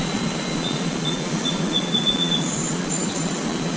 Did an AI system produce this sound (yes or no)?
yes